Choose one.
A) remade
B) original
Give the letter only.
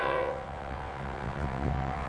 A